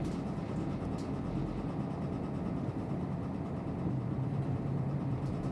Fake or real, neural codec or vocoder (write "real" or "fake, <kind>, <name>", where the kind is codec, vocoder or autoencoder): real